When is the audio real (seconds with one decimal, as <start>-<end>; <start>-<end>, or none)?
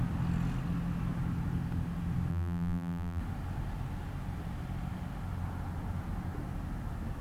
0.0-2.3; 3.2-7.2